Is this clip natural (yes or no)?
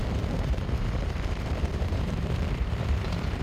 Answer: no